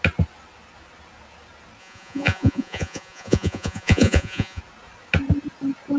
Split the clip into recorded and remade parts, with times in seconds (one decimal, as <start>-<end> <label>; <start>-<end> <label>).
0.0-1.8 recorded; 1.8-4.6 remade; 4.6-6.0 recorded